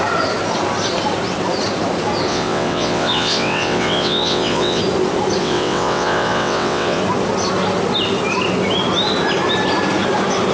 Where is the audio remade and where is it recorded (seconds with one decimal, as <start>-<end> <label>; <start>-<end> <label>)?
0.0-2.3 recorded; 2.3-4.8 remade; 4.8-5.4 recorded; 5.4-7.0 remade; 7.0-10.5 recorded